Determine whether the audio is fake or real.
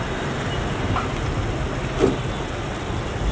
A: real